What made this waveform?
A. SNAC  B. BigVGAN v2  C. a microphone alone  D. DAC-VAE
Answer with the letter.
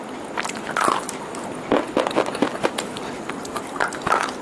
C